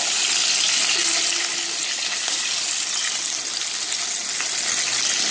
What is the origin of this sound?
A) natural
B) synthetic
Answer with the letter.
A